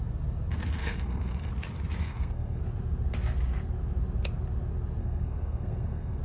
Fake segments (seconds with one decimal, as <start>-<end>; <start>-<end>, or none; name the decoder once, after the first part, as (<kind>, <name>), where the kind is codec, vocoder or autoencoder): 0.8-1.5 (codec, SNAC); 2.0-2.6; 5.0-6.2